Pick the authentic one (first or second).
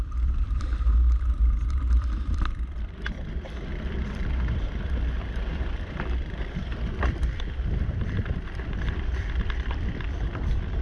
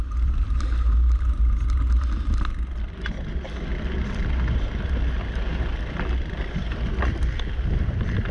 second